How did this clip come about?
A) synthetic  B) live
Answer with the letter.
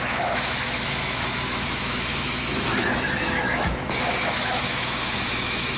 A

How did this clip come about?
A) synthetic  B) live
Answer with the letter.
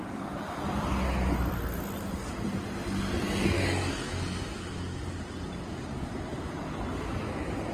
B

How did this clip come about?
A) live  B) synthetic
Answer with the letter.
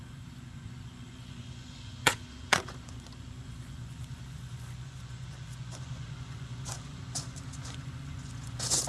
B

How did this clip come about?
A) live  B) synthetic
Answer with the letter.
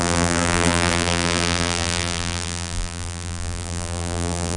B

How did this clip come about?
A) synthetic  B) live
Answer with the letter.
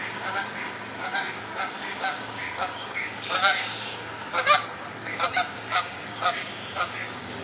A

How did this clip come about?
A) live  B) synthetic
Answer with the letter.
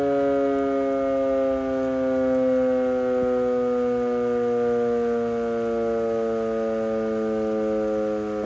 A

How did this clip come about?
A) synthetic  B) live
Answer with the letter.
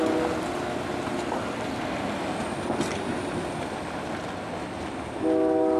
B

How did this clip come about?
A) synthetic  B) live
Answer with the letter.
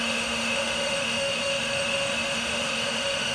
A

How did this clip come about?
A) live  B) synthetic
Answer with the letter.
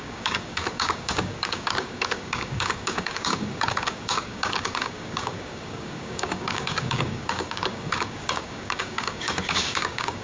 B